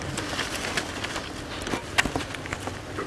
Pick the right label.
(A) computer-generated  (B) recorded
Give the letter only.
B